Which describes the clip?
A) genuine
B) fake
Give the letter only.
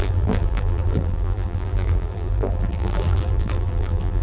B